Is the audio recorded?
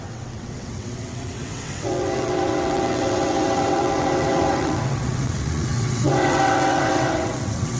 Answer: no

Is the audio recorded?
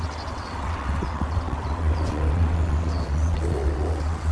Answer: no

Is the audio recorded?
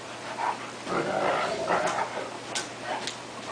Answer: yes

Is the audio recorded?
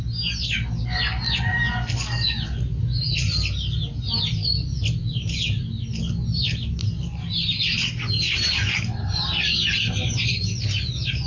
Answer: yes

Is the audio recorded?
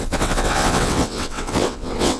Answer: no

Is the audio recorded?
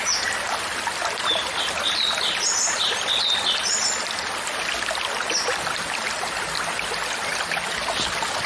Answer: yes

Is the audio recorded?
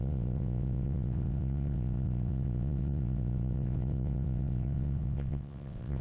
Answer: no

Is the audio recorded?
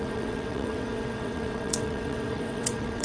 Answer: no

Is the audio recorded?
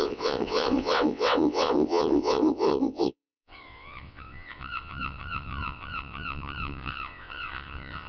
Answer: no